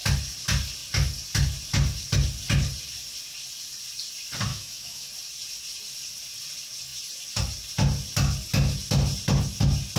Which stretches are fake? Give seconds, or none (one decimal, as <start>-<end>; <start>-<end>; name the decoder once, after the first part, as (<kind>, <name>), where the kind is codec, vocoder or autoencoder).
4.5-5.1 (autoencoder, DAC-VAE)